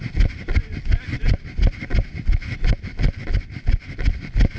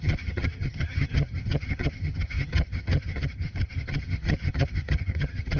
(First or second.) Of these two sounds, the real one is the first